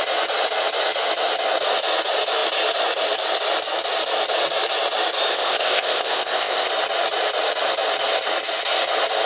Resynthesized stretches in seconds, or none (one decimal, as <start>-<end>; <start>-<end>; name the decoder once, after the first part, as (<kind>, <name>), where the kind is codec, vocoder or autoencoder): 5.3-6.7 (codec, ZipCodec)